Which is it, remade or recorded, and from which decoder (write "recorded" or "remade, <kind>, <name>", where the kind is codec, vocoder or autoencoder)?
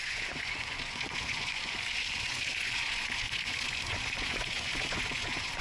remade, vocoder, Vocos